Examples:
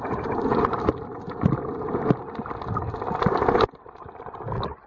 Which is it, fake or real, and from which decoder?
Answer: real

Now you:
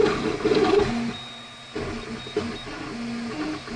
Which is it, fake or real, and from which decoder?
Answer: real